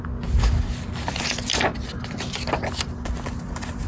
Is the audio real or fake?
real